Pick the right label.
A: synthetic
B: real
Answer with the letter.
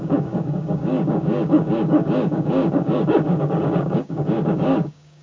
A